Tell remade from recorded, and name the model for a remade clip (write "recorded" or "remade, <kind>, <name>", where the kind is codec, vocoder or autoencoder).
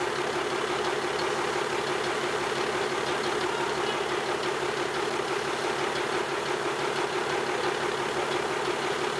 recorded